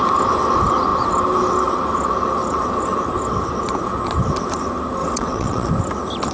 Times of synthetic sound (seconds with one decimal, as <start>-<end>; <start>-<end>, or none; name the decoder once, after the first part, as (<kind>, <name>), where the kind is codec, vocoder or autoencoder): 5.0-5.7 (vocoder, WaveNeXt)